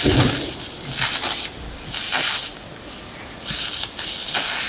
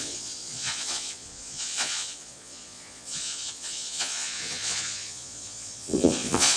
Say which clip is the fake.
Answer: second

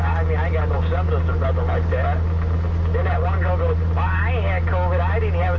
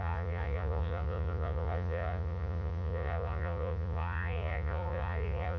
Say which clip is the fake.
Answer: second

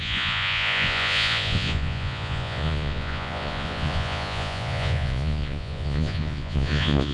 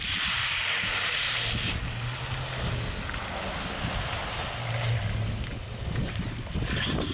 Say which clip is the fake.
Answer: first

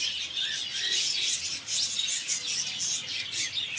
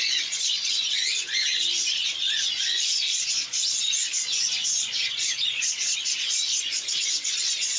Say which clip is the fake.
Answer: second